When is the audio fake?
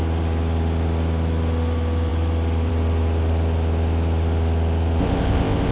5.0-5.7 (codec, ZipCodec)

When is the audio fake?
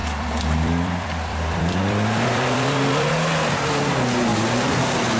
0.0-3.1 (vocoder, BigVGAN v2)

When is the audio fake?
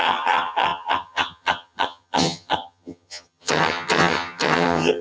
0.0-5.0 (vocoder, HiFi-GAN)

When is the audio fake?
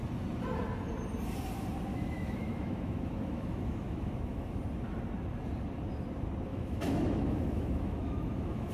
1.9-4.6 (autoencoder, DAC-VAE); 6.5-8.7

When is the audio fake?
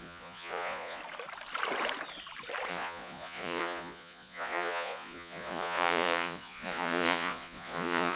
0.0-1.0 (vocoder, Vocos); 2.7-8.2